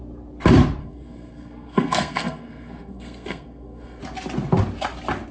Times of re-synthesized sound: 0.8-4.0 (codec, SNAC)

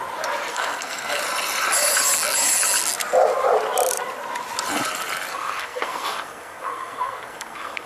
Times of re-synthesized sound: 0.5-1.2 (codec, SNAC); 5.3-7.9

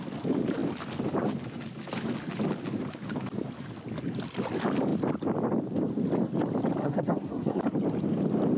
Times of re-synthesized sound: 6.8-7.6 (codec, SNAC)